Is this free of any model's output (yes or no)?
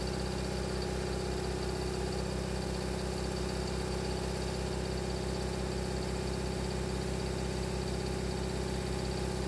yes